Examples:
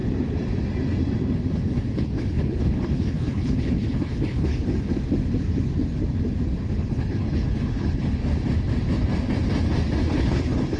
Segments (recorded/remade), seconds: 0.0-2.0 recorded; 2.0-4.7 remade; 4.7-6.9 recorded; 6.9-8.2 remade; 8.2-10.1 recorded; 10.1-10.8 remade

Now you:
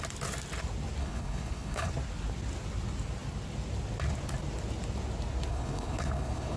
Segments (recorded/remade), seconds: 0.0-1.0 recorded; 1.0-1.9 remade; 1.9-5.5 recorded; 5.5-6.6 remade

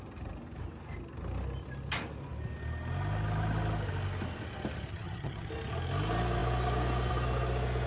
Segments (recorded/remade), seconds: 0.0-4.9 recorded; 4.9-5.5 remade; 5.5-7.9 recorded

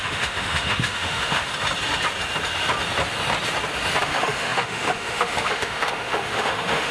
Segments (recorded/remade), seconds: 0.0-1.5 remade; 1.5-4.0 recorded; 4.0-6.9 remade

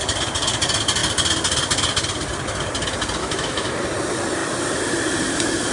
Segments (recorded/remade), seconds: 0.0-3.2 recorded; 3.2-3.7 remade; 3.7-5.7 recorded